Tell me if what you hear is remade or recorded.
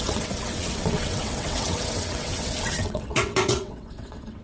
remade